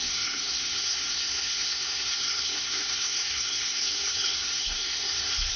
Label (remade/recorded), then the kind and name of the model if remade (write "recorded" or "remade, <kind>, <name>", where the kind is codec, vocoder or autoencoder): remade, codec, SNAC